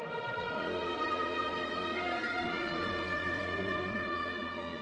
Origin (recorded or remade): remade